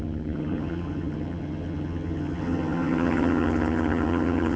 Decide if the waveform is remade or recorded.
remade